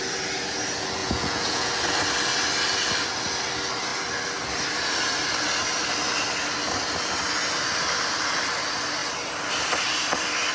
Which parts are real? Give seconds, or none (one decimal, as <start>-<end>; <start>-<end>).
0.0-1.0; 1.7-10.5